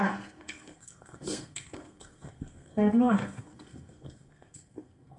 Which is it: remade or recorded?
remade